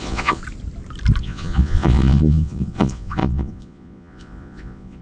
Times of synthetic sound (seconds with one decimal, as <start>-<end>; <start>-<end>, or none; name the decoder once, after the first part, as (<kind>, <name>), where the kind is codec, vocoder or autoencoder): 0.0-0.4 (vocoder, Vocos); 1.2-5.0